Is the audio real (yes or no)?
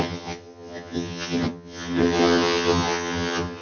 no